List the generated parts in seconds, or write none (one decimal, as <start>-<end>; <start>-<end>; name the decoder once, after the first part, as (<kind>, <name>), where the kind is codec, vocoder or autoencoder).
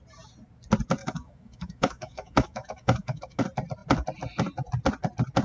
1.0-3.4 (autoencoder, DAC-VAE)